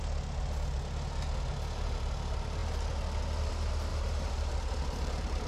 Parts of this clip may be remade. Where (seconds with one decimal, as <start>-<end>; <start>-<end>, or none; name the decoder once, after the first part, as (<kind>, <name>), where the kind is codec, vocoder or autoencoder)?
3.9-5.5 (vocoder, BigVGAN v2)